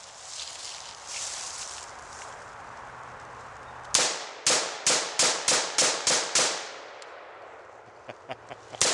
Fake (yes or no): no